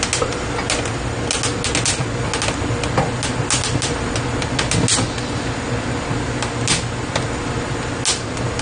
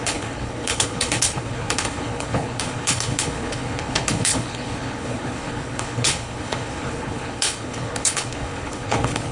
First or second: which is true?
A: first